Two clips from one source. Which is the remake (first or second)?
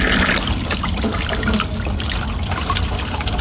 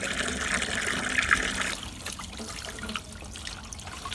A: first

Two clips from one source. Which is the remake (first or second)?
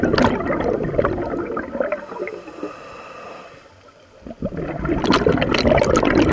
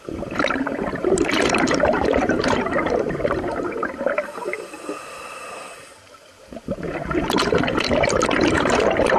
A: second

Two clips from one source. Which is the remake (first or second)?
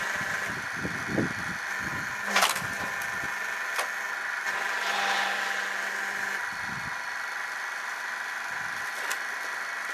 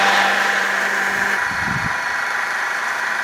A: second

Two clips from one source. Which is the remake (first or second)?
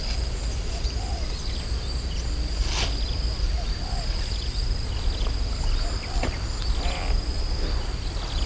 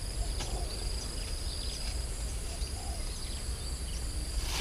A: second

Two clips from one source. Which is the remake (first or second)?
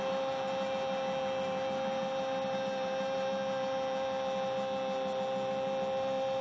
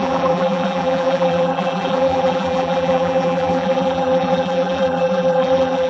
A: second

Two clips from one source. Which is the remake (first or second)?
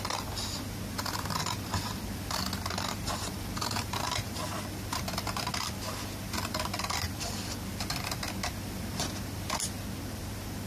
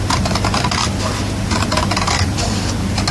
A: first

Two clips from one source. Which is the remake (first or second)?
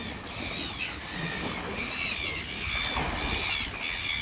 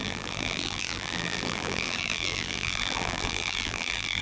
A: second